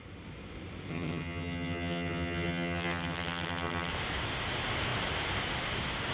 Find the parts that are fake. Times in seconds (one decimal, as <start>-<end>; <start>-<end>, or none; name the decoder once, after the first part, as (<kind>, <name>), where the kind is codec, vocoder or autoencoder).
0.9-3.9 (vocoder, HiFi-GAN)